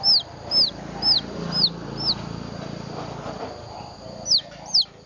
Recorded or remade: recorded